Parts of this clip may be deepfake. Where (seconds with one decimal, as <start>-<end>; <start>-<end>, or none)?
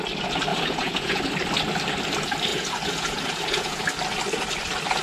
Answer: 0.5-1.2; 2.5-3.8